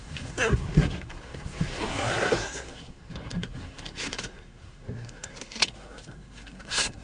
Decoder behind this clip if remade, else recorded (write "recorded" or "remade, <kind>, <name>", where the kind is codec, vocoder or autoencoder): remade, codec, SNAC